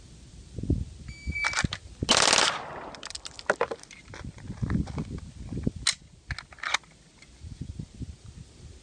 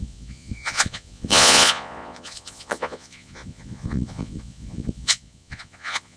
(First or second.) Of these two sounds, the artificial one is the second